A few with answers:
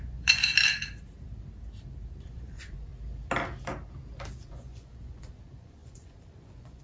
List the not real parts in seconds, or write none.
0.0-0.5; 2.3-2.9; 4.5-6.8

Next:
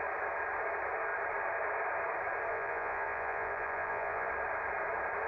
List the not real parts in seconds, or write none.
2.5-4.3